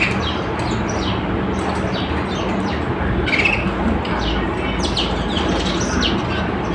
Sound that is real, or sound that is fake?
real